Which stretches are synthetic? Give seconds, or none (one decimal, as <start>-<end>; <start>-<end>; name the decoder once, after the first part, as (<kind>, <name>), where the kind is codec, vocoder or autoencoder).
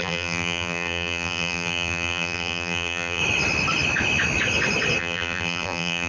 0.0-3.2 (vocoder, BigVGAN v2); 5.0-6.1